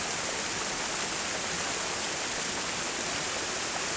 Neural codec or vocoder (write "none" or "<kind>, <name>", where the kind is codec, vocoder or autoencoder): none